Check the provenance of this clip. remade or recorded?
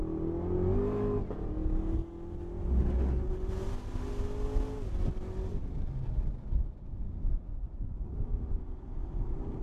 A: recorded